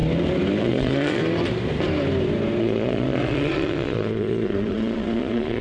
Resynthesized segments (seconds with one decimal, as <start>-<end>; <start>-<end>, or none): 0.6-1.2; 2.6-5.6